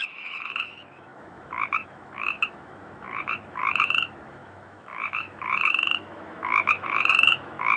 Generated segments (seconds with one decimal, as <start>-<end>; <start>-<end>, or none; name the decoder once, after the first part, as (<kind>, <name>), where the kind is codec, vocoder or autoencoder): 0.0-7.8 (autoencoder, DAC-VAE)

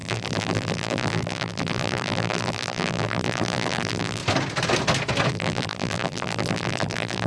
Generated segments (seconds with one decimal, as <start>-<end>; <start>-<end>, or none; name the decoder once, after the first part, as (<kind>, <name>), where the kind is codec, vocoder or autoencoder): 0.0-4.2 (vocoder, BigVGAN v2); 5.3-7.3

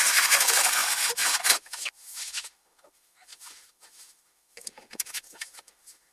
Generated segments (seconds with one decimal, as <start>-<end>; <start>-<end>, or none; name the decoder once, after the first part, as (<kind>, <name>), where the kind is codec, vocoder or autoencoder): 0.0-6.1 (autoencoder, DAC-VAE)

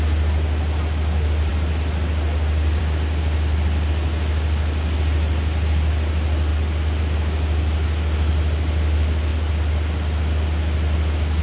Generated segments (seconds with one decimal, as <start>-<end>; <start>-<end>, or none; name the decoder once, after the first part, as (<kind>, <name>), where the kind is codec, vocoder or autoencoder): none

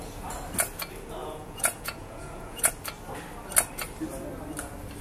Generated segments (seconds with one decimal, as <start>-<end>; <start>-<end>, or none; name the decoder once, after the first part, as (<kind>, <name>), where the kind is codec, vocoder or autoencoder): 1.2-2.7 (vocoder, Vocos)

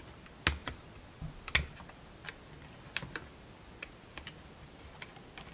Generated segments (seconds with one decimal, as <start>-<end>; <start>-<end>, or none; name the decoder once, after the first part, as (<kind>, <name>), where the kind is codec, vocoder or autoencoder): 0.6-1.2 (vocoder, Vocos)

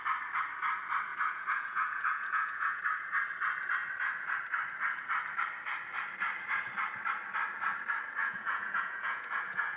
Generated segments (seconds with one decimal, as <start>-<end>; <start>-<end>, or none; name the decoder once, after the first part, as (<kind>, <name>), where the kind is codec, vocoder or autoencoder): 1.1-2.8 (vocoder, Vocos); 8.2-9.8